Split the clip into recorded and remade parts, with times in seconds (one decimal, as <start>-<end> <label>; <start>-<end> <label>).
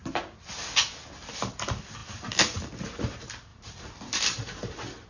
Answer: 0.0-2.0 recorded; 2.0-3.0 remade; 3.0-3.5 recorded; 3.5-5.1 remade